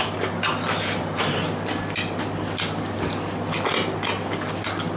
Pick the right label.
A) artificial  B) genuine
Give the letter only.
B